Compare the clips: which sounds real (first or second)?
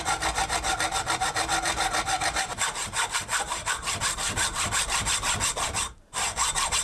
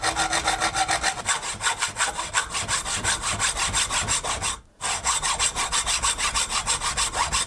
second